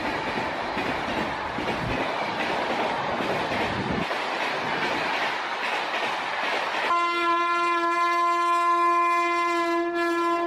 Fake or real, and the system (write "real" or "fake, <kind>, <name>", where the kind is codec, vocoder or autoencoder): real